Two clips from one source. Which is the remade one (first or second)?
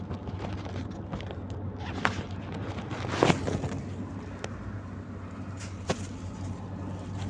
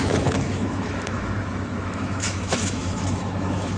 second